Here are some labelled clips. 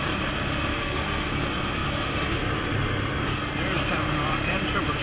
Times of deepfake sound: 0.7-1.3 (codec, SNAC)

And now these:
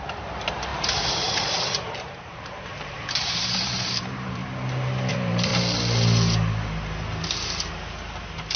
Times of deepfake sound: 0.0-4.4 (vocoder, BigVGAN v2); 5.1-5.5

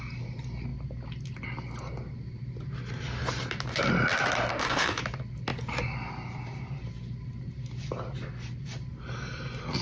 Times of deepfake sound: 4.5-5.0 (autoencoder, DAC-VAE)

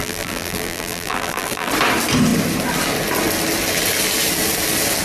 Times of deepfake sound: 0.0-1.7 (vocoder, BigVGAN v2)